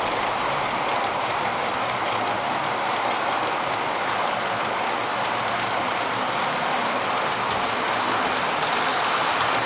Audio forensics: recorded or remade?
recorded